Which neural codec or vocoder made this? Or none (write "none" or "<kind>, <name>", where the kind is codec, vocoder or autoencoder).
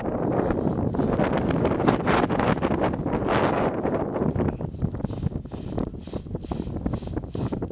none